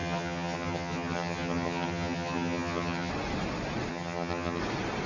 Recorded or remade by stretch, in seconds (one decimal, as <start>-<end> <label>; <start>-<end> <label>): 0.0-3.1 remade; 3.1-3.9 recorded; 3.9-4.6 remade; 4.6-5.1 recorded